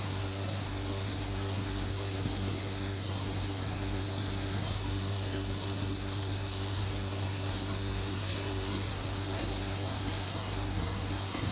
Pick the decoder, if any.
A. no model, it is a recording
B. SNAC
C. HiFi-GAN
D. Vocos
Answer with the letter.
B